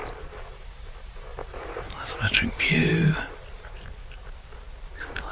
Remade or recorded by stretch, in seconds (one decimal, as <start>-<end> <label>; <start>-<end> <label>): 0.0-5.3 remade